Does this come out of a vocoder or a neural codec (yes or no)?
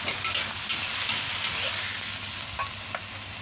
no